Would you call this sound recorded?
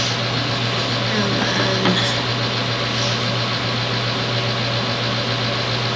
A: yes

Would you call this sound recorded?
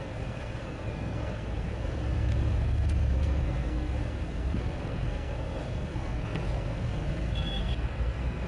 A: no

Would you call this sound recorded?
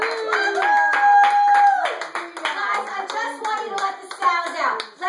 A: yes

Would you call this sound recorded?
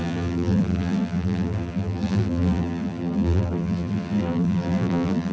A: no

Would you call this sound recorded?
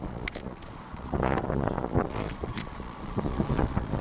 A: no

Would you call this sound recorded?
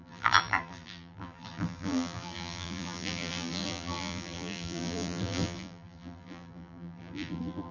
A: no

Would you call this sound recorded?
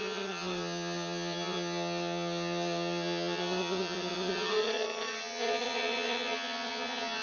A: no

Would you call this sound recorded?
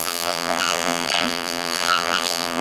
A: no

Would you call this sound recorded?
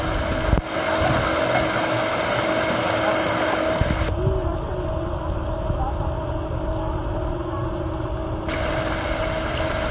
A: yes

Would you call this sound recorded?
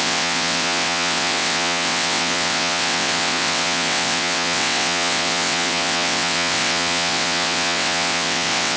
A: no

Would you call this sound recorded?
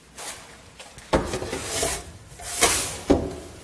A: yes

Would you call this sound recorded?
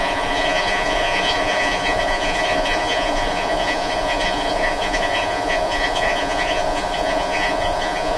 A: no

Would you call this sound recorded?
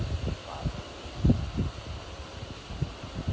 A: yes